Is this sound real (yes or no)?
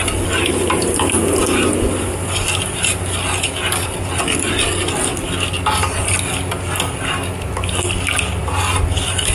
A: yes